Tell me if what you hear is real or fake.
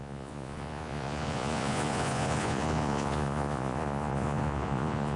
fake